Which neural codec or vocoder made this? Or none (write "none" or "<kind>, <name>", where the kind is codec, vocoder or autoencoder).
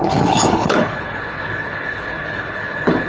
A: codec, HILCodec